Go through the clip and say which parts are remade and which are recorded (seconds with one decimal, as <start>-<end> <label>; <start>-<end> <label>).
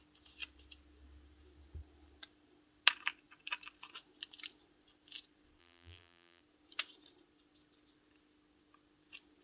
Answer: 0.0-5.6 recorded; 5.6-6.4 remade; 6.4-9.4 recorded